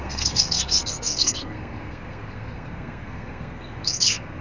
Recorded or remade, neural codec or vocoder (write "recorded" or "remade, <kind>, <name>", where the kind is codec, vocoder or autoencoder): remade, codec, SNAC